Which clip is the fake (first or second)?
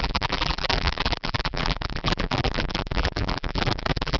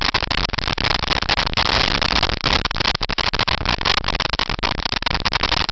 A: first